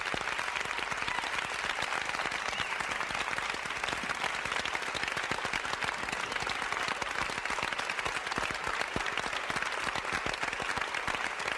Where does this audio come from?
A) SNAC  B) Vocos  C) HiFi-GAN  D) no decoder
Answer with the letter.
D